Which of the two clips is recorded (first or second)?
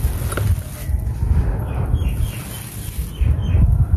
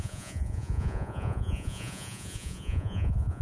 first